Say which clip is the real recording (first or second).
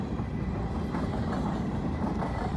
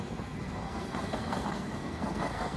first